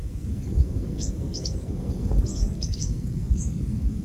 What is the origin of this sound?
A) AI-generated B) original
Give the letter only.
A